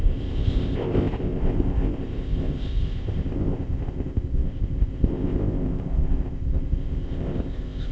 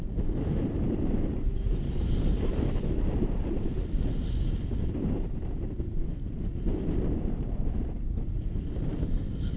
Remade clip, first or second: first